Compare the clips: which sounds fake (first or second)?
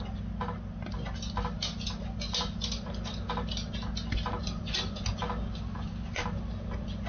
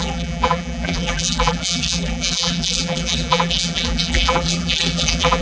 second